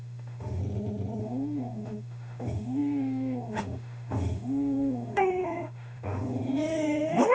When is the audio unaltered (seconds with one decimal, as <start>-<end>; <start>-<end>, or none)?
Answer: 0.6-1.2